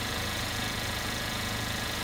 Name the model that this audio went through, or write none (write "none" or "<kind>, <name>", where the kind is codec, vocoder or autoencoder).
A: vocoder, Vocos